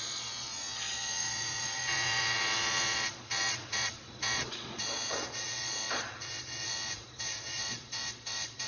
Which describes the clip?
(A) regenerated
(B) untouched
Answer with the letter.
A